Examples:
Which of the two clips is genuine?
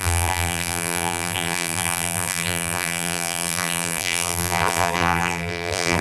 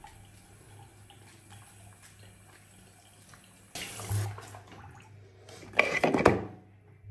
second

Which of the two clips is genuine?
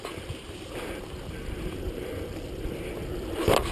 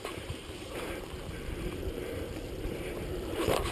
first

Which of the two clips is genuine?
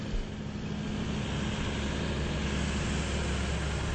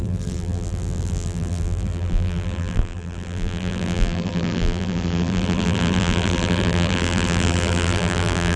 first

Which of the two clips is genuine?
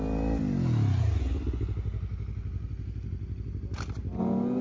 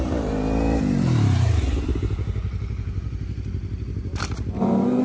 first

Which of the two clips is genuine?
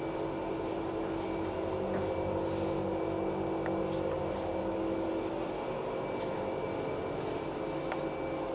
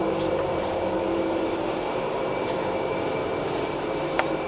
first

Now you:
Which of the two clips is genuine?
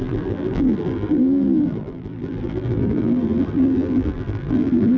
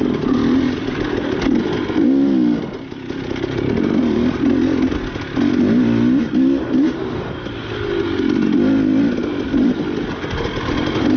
second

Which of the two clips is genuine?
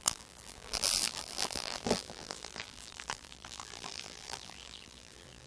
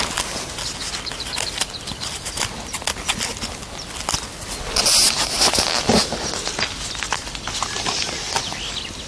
second